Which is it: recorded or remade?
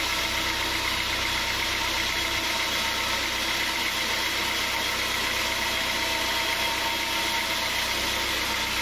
recorded